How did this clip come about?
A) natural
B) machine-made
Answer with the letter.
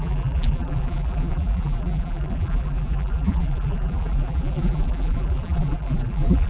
B